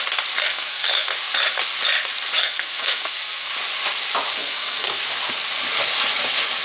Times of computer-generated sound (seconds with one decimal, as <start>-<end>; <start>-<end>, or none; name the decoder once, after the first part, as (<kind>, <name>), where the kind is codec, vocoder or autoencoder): 0.4-1.1 (codec, SNAC); 2.4-3.5; 4.4-5.0